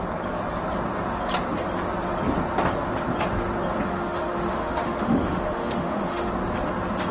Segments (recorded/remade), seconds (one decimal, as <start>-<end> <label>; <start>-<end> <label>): 0.0-3.9 recorded; 3.9-6.3 remade; 6.3-7.1 recorded